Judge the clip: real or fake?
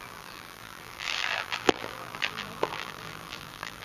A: fake